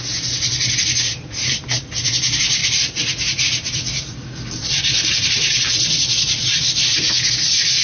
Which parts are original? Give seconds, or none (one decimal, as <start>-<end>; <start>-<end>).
0.0-1.1; 2.0-2.6; 7.3-7.8